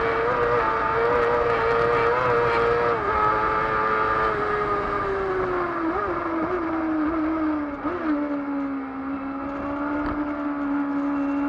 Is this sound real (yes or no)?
yes